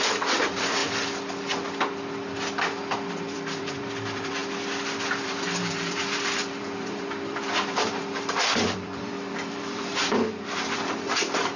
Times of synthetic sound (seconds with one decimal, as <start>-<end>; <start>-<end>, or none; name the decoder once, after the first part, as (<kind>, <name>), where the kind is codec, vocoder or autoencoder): 0.0-0.8 (vocoder, BigVGAN v2); 3.1-4.4; 5.2-11.6